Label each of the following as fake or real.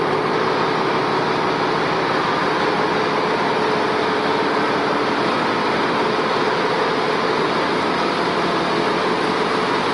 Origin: fake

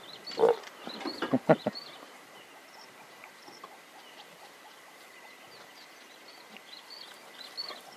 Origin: fake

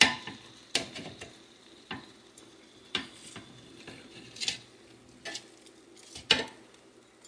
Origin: real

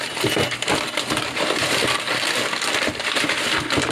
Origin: real